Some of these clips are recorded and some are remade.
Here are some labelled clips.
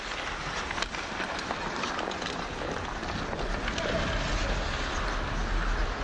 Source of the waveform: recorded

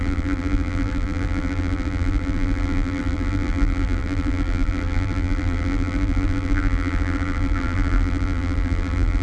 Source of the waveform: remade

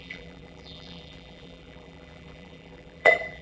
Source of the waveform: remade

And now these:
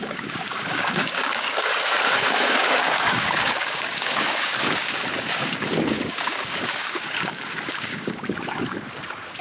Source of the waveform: remade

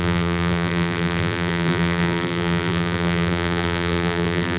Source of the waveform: remade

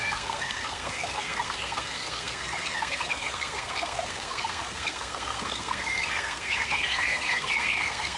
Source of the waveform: remade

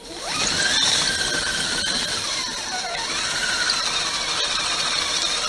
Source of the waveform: recorded